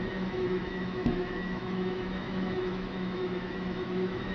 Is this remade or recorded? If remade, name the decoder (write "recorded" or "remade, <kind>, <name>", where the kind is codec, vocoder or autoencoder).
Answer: remade, autoencoder, DAC-VAE